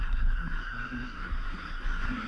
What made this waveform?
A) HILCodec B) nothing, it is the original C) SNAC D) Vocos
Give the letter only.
C